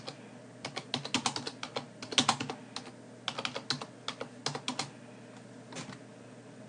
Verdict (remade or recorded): recorded